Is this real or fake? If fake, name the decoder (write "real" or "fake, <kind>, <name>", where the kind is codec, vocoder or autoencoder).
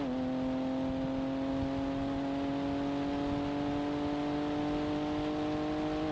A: real